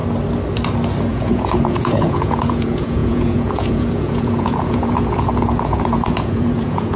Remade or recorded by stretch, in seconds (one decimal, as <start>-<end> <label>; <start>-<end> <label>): 0.0-1.1 recorded; 1.1-7.0 remade